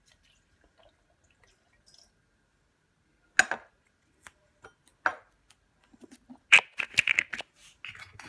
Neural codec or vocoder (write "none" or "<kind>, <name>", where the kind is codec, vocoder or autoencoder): none